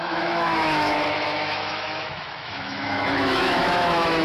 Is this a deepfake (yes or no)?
yes